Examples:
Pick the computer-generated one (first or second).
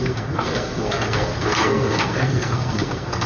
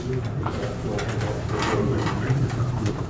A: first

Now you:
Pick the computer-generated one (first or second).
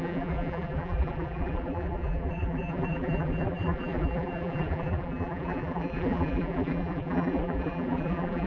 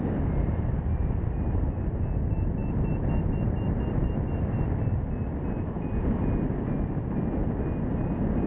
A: first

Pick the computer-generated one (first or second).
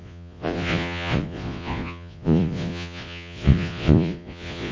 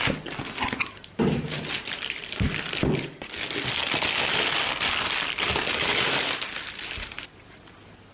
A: first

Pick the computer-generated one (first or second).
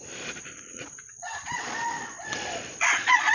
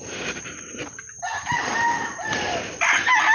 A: first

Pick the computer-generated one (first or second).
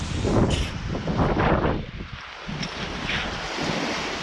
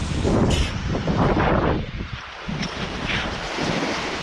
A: second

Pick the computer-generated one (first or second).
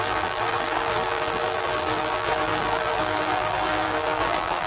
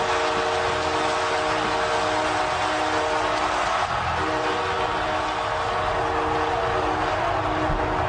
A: first